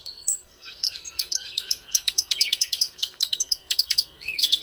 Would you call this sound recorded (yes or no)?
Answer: no